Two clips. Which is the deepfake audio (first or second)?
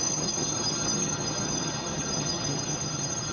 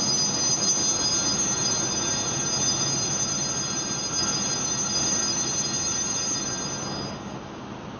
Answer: first